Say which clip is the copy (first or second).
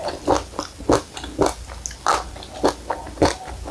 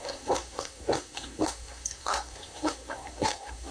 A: second